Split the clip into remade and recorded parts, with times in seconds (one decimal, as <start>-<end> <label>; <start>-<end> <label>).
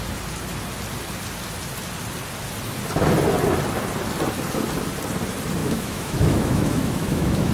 0.0-5.6 recorded; 5.6-7.5 remade